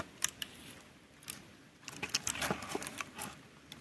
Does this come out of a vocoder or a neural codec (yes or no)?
no